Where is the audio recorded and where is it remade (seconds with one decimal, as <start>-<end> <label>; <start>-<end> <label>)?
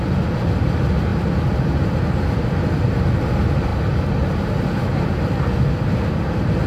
0.0-6.7 recorded